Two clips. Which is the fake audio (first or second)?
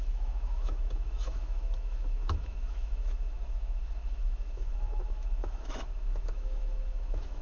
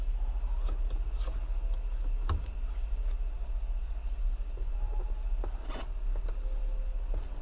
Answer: first